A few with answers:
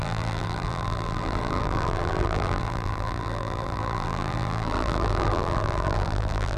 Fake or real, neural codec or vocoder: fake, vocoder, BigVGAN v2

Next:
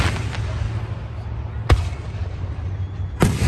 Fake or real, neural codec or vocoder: real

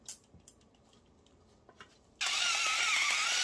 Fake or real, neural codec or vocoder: real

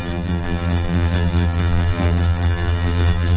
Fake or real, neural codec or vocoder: fake, vocoder, BigVGAN v2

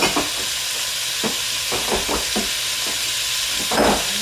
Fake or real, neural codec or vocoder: real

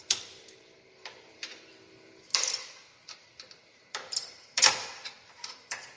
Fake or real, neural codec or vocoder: fake, vocoder, BigVGAN v2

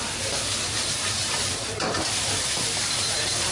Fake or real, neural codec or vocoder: fake, vocoder, BigVGAN v2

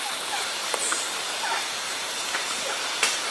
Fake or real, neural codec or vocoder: fake, vocoder, BigVGAN v2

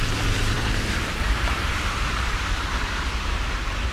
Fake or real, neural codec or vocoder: fake, vocoder, BigVGAN v2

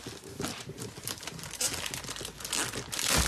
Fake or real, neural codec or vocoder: real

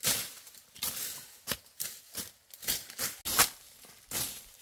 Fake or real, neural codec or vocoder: real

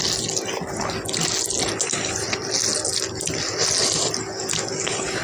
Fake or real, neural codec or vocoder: real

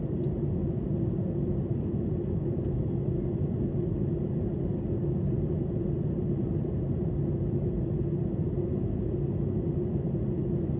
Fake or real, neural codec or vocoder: real